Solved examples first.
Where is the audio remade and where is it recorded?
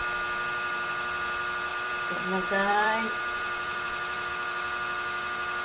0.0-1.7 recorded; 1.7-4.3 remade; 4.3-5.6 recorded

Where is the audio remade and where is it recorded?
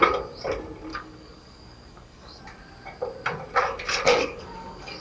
0.0-0.9 recorded; 0.9-2.4 remade; 2.4-4.1 recorded; 4.1-5.0 remade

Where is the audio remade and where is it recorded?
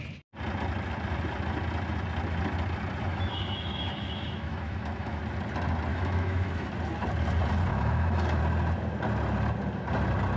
0.0-3.1 recorded; 3.1-5.2 remade; 5.2-5.9 recorded; 5.9-6.7 remade; 6.7-7.7 recorded; 7.7-8.4 remade; 8.4-10.4 recorded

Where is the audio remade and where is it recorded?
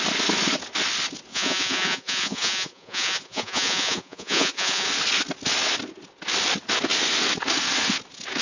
0.0-1.3 recorded; 1.3-4.9 remade; 4.9-8.4 recorded